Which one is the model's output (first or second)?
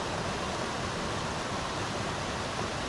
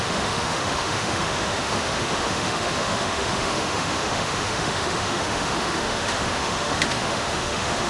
second